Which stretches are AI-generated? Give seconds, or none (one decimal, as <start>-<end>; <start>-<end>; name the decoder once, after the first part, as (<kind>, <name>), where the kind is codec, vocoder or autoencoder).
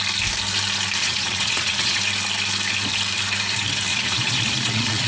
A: 1.0-2.0 (vocoder, Vocos); 3.9-5.1